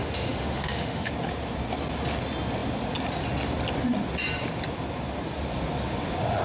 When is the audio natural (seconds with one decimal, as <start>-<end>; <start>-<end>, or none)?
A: 1.1-6.4

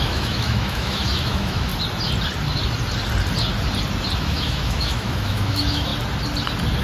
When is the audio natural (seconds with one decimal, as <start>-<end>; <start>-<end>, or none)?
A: 1.7-4.2; 5.9-6.8

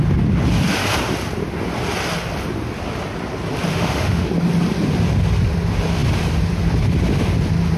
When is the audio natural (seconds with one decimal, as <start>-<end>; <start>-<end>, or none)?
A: 0.0-3.7; 4.3-7.8

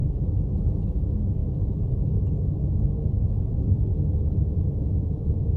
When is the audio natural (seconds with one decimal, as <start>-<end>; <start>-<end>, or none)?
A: 0.0-0.9; 1.4-4.8

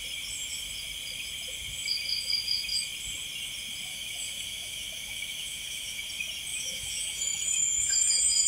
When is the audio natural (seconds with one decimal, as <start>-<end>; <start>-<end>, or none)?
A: 0.0-3.9; 6.0-6.5

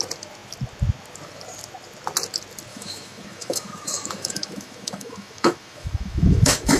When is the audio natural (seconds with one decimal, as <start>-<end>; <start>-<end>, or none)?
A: 0.0-2.7